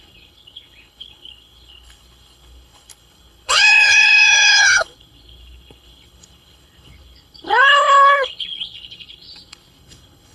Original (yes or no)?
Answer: no